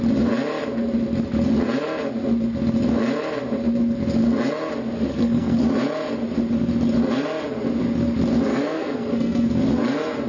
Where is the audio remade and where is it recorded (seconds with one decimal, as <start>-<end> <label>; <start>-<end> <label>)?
0.0-5.1 recorded; 5.1-5.6 remade; 5.6-8.5 recorded; 8.5-9.5 remade; 9.5-10.3 recorded

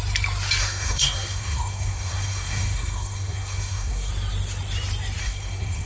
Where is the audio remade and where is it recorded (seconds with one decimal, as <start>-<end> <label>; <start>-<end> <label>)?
0.0-0.6 recorded; 0.6-4.1 remade; 4.1-5.2 recorded; 5.2-5.9 remade

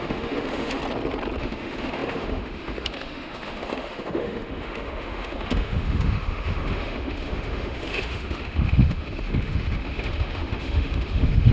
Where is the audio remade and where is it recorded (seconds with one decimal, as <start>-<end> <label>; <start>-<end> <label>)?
0.0-0.8 remade; 0.8-1.4 recorded; 1.4-11.5 remade

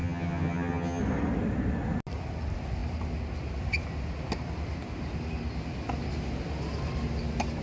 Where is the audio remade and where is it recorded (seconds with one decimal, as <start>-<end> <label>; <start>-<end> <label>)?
0.0-1.0 remade; 1.0-7.6 recorded

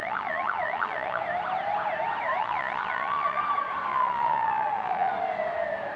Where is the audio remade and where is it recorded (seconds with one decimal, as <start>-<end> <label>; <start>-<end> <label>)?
0.0-1.2 remade; 1.2-2.4 recorded; 2.4-3.4 remade; 3.4-3.9 recorded; 3.9-5.1 remade; 5.1-6.0 recorded

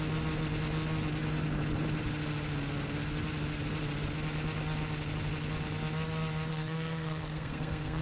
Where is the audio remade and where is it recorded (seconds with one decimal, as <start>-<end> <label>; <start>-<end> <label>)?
0.0-6.5 recorded; 6.5-8.0 remade